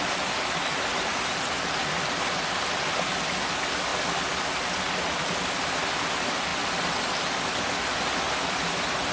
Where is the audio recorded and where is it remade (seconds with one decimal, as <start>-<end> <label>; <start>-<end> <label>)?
0.0-9.1 recorded